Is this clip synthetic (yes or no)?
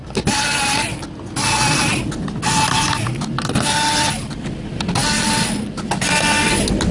no